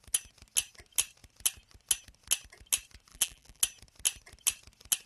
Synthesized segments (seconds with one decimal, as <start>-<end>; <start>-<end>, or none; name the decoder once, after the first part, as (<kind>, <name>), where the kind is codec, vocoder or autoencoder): 3.1-3.6 (vocoder, BigVGAN v2)